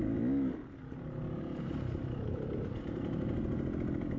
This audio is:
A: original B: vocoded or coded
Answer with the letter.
A